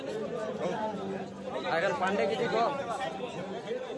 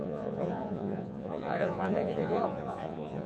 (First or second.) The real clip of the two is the first